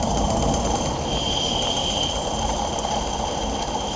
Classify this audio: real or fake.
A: real